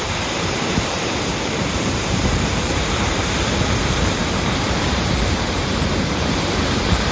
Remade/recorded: remade